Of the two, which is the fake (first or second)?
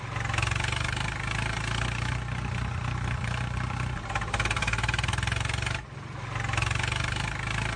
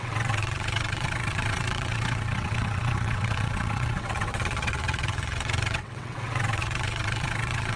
second